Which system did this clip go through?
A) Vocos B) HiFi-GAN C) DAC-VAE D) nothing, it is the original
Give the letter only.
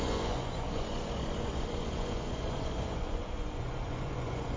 A